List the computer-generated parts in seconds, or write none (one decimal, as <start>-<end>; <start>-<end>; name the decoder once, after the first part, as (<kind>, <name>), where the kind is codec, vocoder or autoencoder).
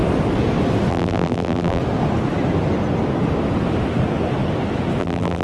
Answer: 0.9-1.8 (vocoder, BigVGAN v2); 5.0-5.4